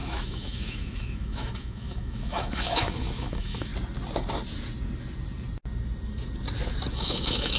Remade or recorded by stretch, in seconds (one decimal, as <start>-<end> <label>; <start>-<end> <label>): 0.0-3.7 remade; 3.7-6.9 recorded; 6.9-7.6 remade